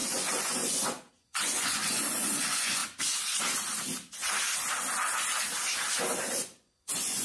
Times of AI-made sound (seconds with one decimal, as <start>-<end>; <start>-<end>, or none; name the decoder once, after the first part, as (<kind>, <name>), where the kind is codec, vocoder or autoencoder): 0.0-2.8 (vocoder, Vocos); 6.2-7.2